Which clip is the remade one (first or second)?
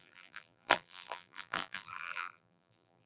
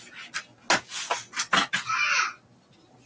first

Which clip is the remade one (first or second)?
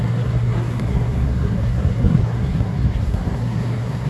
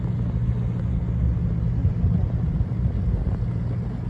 first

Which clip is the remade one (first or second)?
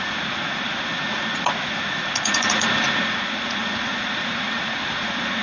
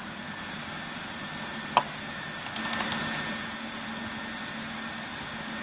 first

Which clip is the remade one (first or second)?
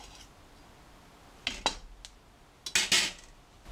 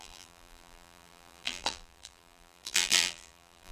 second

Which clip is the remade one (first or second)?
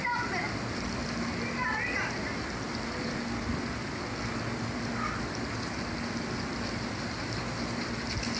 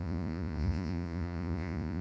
second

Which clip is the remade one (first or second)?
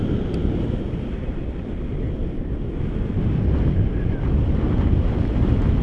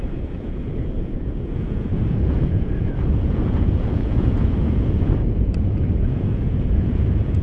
second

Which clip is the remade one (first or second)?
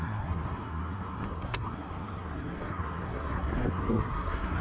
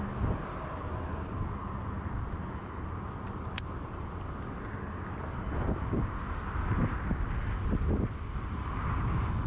first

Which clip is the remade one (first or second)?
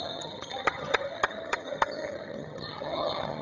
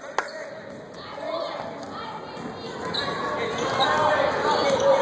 first